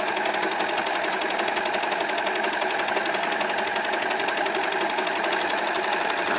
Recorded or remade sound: recorded